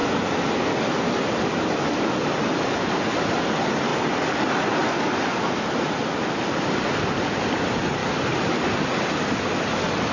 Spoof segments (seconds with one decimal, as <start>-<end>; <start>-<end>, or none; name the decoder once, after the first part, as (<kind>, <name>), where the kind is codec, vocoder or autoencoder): none